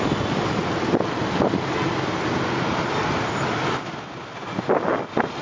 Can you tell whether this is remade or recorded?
recorded